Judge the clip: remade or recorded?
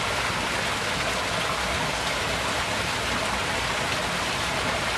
recorded